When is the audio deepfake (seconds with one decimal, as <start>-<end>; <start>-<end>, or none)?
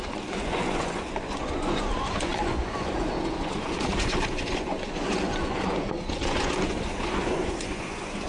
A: 0.0-8.3